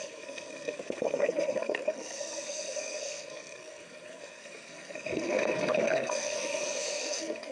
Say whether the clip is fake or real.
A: fake